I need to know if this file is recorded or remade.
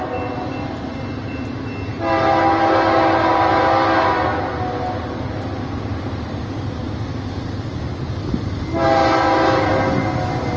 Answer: recorded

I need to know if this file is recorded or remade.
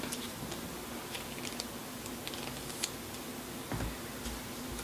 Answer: recorded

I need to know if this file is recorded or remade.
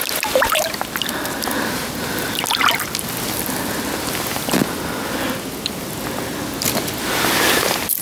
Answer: recorded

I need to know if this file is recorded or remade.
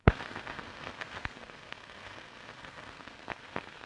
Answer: remade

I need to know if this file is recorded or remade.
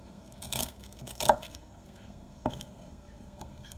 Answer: remade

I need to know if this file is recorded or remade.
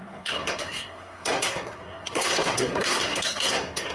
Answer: remade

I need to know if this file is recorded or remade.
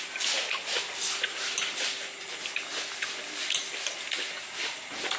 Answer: recorded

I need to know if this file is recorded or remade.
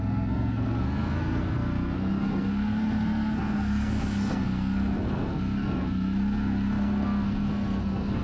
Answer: remade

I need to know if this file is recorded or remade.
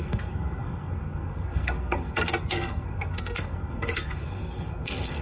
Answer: remade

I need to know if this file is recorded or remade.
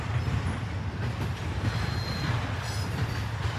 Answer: recorded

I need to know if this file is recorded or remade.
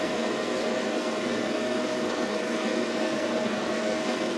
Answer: remade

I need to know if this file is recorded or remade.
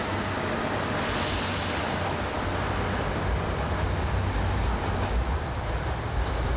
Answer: recorded